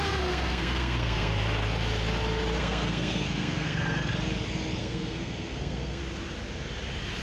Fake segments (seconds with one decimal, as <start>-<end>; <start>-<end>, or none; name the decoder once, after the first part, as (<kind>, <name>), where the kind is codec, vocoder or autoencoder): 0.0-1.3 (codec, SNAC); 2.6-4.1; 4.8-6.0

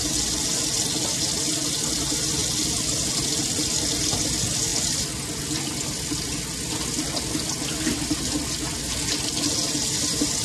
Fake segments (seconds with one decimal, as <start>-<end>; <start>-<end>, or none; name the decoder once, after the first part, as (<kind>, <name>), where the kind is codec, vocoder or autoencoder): none

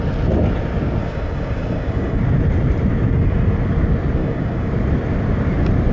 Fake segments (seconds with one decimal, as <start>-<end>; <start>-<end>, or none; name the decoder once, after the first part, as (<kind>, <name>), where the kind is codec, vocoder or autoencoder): 1.0-2.2 (codec, DAC); 4.2-4.7

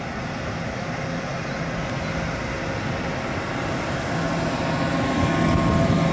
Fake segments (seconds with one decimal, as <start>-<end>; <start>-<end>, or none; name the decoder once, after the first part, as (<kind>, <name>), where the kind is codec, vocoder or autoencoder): none

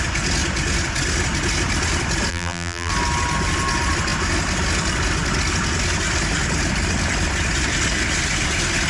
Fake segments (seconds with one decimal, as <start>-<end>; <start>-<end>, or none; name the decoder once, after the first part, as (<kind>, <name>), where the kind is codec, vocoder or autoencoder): 2.3-2.9 (vocoder, BigVGAN v2)

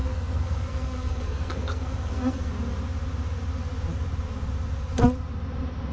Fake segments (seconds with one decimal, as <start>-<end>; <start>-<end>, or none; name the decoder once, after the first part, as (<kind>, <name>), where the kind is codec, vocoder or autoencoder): 0.0-2.5 (codec, SNAC)

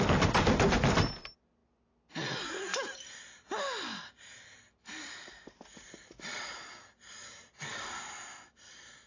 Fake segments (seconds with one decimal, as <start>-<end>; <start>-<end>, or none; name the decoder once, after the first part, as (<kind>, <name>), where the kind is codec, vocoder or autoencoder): none